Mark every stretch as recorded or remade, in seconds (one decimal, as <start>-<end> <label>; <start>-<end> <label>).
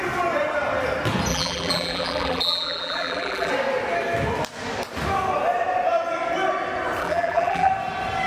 0.0-1.3 recorded; 1.3-3.5 remade; 3.5-7.0 recorded; 7.0-7.7 remade; 7.7-8.3 recorded